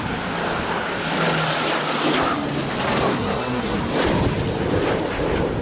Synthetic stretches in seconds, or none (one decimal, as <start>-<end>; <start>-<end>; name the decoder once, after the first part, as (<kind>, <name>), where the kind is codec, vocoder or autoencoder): 3.1-3.8 (codec, SNAC)